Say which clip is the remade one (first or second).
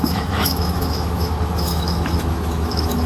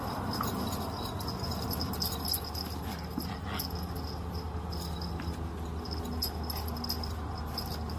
first